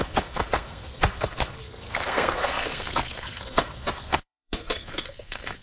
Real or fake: fake